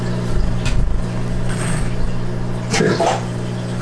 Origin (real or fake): real